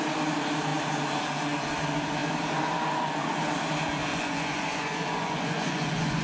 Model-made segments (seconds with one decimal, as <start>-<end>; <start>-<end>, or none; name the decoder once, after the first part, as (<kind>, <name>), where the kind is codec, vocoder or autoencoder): 4.1-6.2 (vocoder, Vocos)